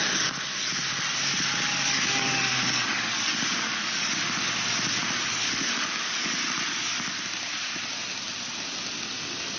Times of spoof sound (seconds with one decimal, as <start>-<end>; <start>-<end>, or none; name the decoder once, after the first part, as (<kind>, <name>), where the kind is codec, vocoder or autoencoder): 1.7-4.1 (codec, DAC); 5.3-6.2